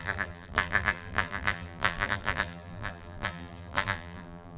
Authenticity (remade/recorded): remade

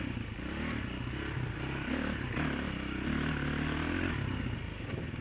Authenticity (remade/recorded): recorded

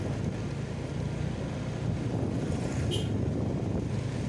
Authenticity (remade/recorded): recorded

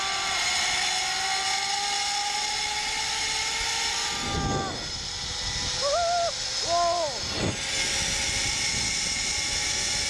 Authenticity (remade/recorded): recorded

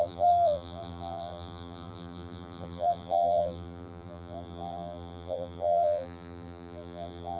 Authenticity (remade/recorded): remade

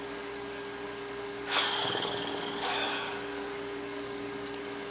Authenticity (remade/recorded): remade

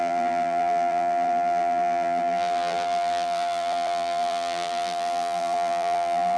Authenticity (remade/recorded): remade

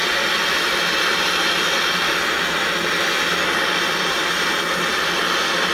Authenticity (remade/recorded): recorded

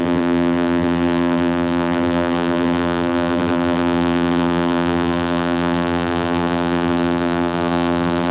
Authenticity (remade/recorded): remade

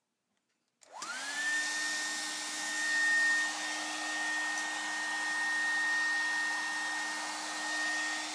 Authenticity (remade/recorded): recorded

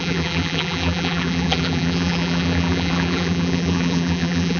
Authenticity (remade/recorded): remade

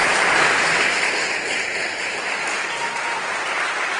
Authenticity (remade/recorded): recorded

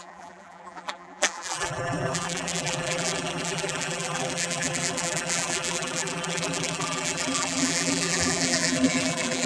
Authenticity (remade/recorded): remade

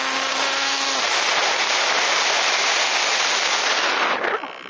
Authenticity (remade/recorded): recorded